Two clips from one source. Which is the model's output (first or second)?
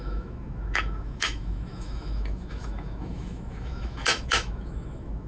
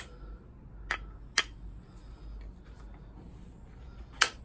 first